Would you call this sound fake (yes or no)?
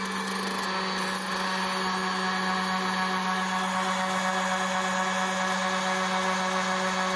no